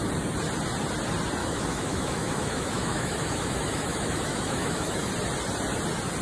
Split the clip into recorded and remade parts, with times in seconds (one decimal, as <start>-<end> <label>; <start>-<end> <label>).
0.0-1.4 recorded; 1.4-5.1 remade; 5.1-6.2 recorded